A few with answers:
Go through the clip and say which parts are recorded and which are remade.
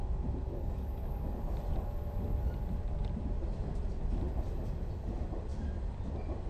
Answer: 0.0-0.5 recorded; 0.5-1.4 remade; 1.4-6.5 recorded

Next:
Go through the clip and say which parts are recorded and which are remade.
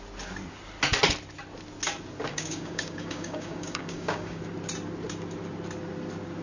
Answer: 0.0-2.3 recorded; 2.3-4.4 remade; 4.4-6.4 recorded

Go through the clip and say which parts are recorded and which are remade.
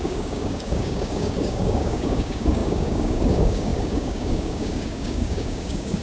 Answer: 0.0-6.0 remade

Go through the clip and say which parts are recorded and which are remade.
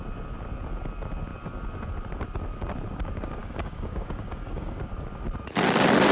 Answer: 0.0-3.4 recorded; 3.4-4.8 remade; 4.8-6.1 recorded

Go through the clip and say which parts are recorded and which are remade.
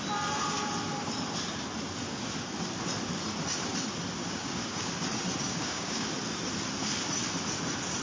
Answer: 0.0-4.2 recorded; 4.2-4.9 remade; 4.9-5.4 recorded; 5.4-6.1 remade; 6.1-8.0 recorded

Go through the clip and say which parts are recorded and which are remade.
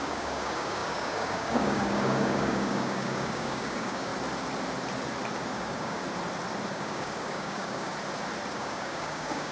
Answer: 0.0-4.1 remade; 4.1-5.5 recorded; 5.5-6.0 remade; 6.0-6.7 recorded; 6.7-7.9 remade; 7.9-8.5 recorded; 8.5-9.5 remade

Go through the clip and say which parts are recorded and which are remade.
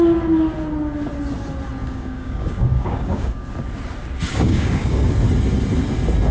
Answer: 0.0-1.8 recorded; 1.8-3.4 remade; 3.4-4.3 recorded; 4.3-5.1 remade; 5.1-6.3 recorded